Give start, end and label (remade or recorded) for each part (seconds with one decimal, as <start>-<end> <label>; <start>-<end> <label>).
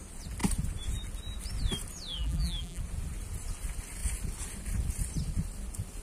0.0-2.1 recorded; 2.1-2.8 remade; 2.8-6.0 recorded